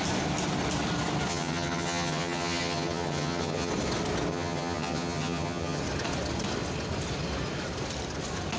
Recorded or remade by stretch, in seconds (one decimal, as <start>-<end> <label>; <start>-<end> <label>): 0.0-1.3 recorded; 1.3-3.7 remade; 3.7-4.3 recorded; 4.3-5.8 remade; 5.8-8.6 recorded